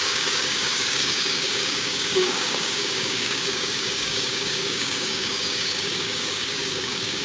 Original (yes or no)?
no